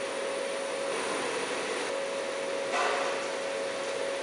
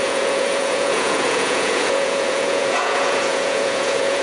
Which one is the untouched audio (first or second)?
first